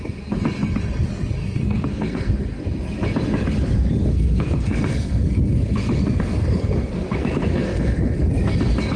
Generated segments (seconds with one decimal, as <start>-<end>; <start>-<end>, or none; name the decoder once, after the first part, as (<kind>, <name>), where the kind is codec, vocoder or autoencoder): 1.4-2.3 (codec, SNAC); 4.0-8.3